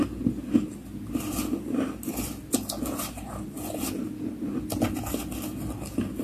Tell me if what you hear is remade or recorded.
recorded